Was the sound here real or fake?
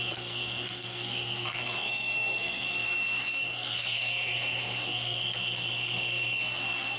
fake